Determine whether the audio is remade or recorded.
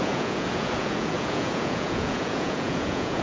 remade